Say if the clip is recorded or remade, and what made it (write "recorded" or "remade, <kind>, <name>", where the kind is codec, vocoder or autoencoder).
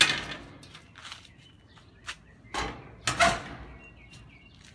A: recorded